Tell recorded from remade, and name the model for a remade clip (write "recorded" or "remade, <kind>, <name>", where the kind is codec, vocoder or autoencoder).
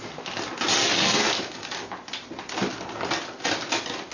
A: recorded